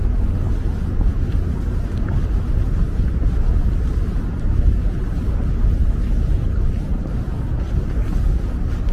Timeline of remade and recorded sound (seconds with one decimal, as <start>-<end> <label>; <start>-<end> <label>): 0.0-8.9 recorded